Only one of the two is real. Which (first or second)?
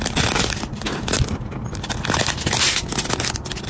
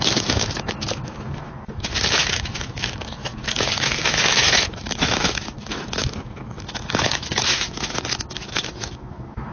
first